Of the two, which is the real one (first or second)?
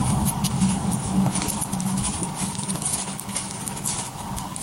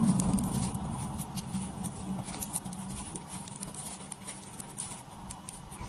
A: second